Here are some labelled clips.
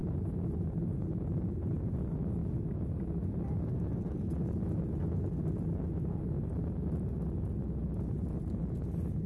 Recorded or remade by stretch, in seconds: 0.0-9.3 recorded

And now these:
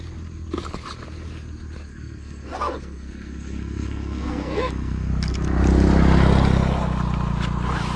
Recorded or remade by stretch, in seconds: 0.0-1.9 recorded; 1.9-5.1 remade; 5.1-8.0 recorded